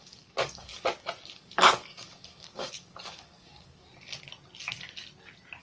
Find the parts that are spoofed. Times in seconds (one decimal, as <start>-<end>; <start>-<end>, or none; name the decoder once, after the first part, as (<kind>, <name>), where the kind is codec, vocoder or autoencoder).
0.0-0.7 (codec, DAC); 1.3-3.9